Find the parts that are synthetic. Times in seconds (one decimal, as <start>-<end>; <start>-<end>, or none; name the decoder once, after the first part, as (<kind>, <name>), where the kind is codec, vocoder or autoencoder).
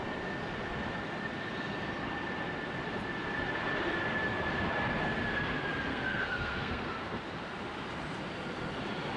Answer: 5.9-7.2 (codec, SNAC)